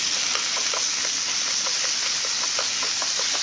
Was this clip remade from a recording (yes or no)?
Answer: no